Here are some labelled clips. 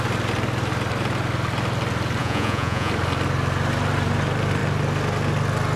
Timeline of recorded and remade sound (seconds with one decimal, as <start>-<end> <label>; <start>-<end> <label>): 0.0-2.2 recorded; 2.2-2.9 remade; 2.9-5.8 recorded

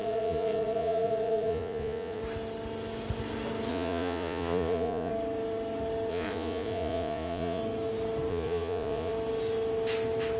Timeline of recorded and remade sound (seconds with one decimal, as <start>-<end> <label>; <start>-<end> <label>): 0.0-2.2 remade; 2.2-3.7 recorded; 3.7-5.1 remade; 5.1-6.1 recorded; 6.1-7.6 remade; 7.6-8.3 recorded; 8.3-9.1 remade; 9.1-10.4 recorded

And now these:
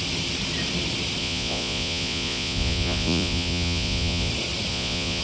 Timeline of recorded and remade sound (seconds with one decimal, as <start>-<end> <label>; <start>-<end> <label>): 0.0-1.2 recorded; 1.2-4.3 remade; 4.3-4.7 recorded; 4.7-5.2 remade

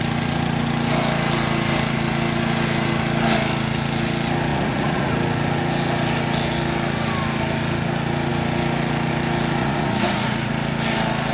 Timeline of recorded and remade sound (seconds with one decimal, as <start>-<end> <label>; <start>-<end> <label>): 0.0-4.5 recorded; 4.5-5.1 remade; 5.1-9.6 recorded; 9.6-10.5 remade; 10.5-11.3 recorded

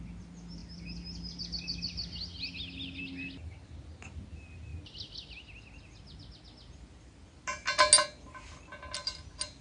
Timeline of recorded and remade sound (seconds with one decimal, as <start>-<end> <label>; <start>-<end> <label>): 0.0-9.6 recorded

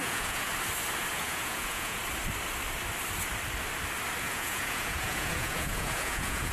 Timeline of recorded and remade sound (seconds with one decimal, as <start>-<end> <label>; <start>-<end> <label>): 0.0-0.5 remade; 0.5-1.1 recorded; 1.1-2.0 remade; 2.0-4.2 recorded; 4.2-6.5 remade

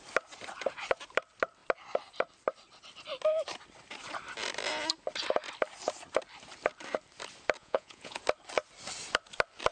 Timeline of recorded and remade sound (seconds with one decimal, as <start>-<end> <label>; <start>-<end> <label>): 0.0-7.6 recorded; 7.6-8.2 remade; 8.2-9.7 recorded